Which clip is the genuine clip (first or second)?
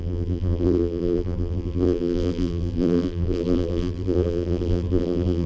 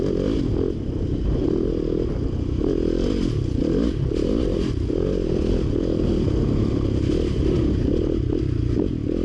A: second